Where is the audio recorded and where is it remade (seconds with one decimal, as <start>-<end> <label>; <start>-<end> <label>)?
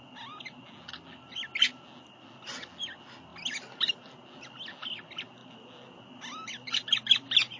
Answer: 0.0-7.6 recorded